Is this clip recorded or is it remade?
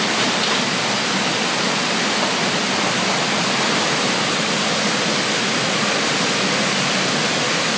recorded